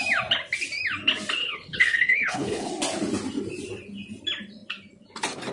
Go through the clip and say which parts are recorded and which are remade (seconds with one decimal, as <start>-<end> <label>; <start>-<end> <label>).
0.0-1.4 recorded; 1.4-2.7 remade; 2.7-5.5 recorded